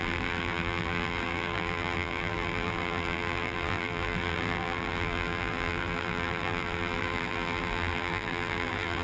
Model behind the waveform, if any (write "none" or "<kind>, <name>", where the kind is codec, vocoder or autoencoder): vocoder, BigVGAN v2